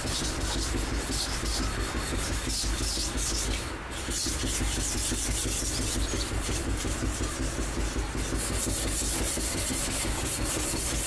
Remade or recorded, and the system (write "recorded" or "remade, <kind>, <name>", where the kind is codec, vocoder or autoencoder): recorded